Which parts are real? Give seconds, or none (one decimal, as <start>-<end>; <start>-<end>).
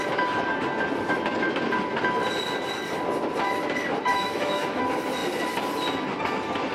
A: 0.0-4.1; 4.8-6.7